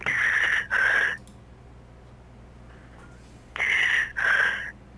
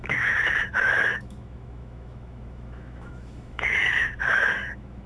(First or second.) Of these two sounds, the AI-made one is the second